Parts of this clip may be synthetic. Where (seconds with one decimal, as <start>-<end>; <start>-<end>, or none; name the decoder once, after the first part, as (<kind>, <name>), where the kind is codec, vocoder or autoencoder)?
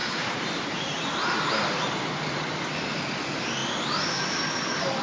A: 0.0-3.0 (vocoder, BigVGAN v2)